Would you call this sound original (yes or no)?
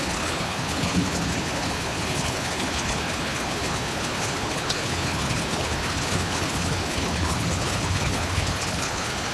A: no